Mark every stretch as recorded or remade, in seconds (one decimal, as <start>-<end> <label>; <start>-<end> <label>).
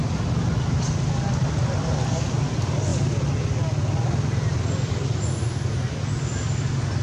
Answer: 0.0-7.0 recorded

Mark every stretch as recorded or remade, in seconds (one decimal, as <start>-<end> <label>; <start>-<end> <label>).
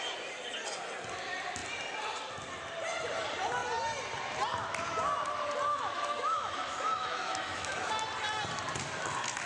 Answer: 0.0-5.7 recorded; 5.7-7.9 remade; 7.9-9.5 recorded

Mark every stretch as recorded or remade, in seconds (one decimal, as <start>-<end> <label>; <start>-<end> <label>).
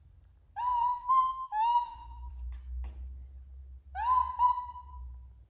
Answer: 0.0-0.9 recorded; 0.9-2.3 remade; 2.3-5.5 recorded